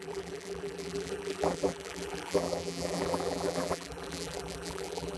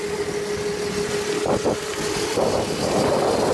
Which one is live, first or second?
second